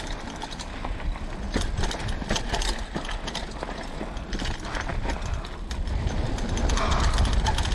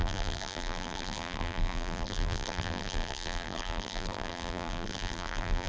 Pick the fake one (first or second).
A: second